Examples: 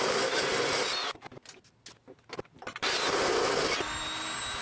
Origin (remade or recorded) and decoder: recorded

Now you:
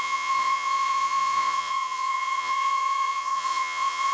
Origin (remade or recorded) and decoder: remade, vocoder, Vocos